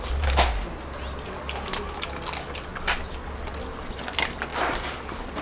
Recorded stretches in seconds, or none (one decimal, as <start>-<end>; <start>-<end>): 0.0-5.4